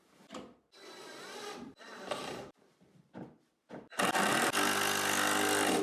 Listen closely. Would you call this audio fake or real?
fake